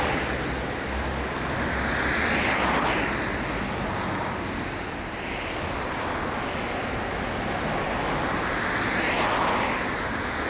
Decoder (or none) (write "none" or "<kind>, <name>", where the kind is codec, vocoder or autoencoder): none